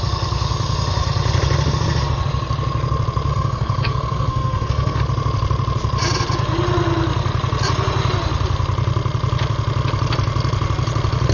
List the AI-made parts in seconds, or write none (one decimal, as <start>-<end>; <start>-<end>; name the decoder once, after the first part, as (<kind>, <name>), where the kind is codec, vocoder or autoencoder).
3.3-5.0 (codec, SNAC)